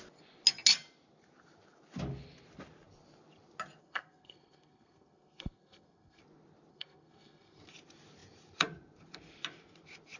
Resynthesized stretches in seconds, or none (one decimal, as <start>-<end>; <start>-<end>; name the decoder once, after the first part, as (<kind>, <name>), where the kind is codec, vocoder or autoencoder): 3.8-6.2 (codec, SNAC); 6.7-7.6